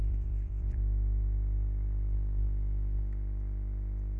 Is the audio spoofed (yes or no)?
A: yes